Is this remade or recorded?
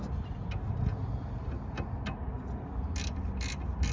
recorded